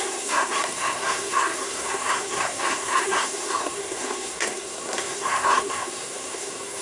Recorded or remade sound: remade